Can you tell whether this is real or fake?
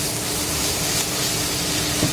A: real